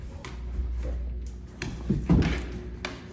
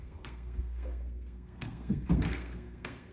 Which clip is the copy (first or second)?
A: second